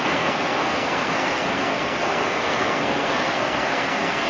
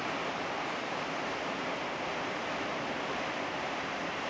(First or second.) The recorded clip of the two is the second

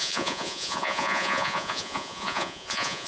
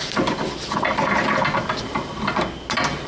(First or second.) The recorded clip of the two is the second